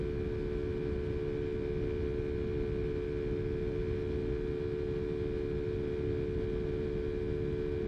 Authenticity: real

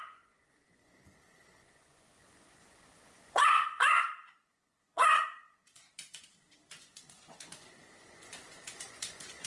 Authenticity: fake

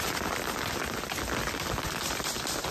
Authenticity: real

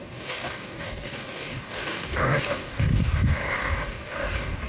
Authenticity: fake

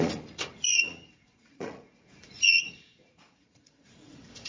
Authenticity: fake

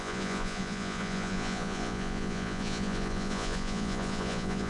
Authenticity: fake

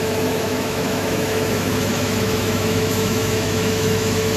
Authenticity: fake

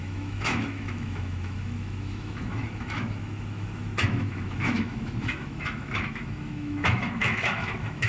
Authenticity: fake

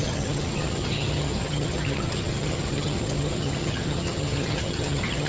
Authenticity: fake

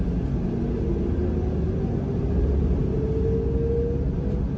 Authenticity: real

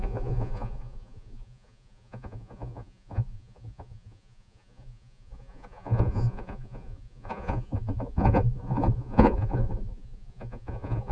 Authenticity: fake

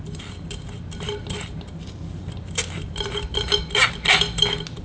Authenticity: real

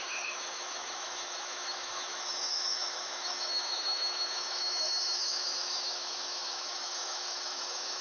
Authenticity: fake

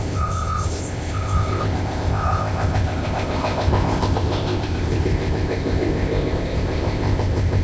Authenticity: fake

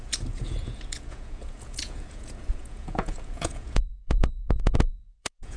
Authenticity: fake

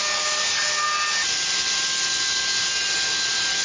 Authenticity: real